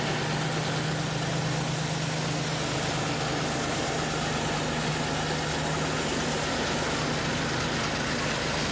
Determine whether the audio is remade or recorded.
recorded